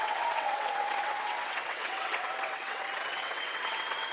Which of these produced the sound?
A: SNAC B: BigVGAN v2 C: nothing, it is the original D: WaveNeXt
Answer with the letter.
D